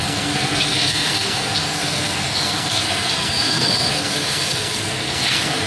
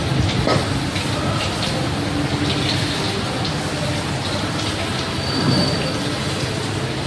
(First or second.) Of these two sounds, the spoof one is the first